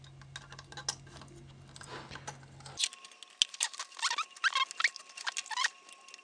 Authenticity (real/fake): real